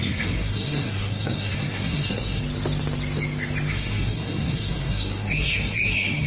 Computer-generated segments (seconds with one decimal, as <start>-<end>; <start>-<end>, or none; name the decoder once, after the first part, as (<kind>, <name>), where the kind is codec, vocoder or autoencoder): 0.0-2.4 (codec, SNAC); 3.7-6.3